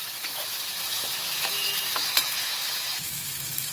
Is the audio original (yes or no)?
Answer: no